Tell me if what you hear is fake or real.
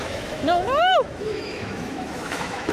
fake